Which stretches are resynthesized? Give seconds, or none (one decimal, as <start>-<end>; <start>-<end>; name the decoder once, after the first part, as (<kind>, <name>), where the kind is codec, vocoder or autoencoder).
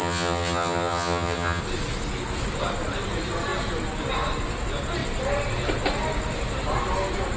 0.0-1.6 (vocoder, HiFi-GAN)